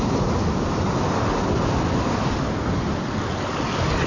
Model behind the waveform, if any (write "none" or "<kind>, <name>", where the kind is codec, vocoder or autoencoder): none